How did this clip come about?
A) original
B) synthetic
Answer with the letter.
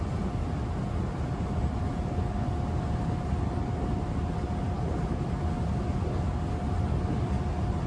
A